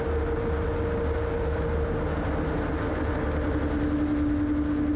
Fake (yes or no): no